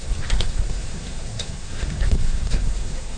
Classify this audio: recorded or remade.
remade